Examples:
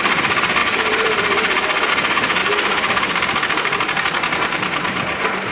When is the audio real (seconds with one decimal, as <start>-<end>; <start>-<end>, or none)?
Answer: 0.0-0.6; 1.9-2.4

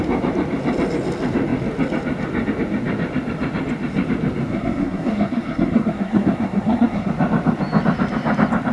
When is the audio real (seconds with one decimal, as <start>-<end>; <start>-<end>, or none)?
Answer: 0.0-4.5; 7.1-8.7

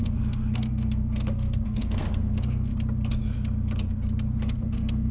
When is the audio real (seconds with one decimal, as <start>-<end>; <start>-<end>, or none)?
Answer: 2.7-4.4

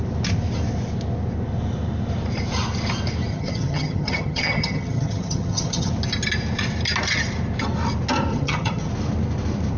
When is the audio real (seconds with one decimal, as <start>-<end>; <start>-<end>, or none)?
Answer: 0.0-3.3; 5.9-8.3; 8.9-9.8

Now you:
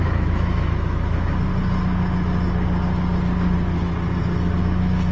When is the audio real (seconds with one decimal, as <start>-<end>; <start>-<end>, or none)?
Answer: 1.5-4.6

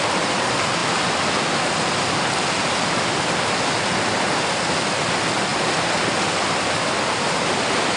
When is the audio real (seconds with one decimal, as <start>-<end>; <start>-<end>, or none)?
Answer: 0.0-8.0